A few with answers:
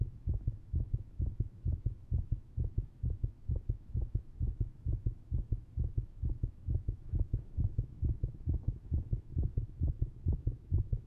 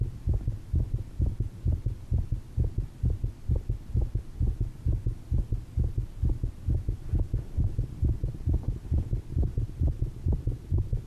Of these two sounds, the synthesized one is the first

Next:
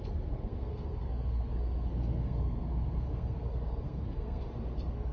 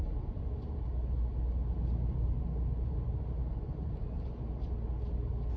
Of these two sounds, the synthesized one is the first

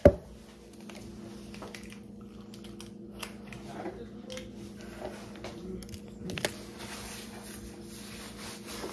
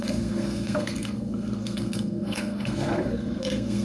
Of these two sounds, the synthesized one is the second